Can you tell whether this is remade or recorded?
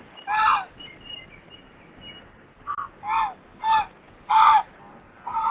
recorded